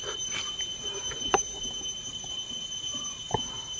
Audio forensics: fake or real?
real